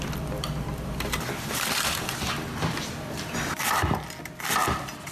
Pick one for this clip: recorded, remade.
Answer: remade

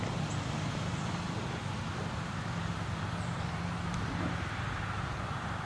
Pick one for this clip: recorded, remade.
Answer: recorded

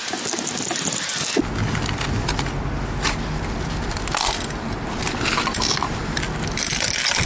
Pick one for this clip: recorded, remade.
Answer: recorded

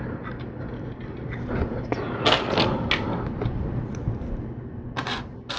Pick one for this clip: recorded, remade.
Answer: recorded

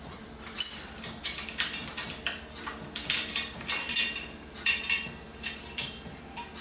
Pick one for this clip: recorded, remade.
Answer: remade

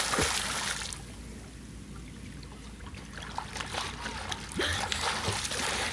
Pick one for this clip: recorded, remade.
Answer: recorded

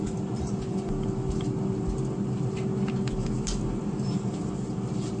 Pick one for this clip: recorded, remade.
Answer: recorded